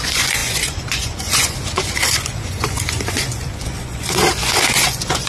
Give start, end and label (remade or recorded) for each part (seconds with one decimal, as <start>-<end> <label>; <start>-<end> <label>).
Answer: 0.0-5.3 remade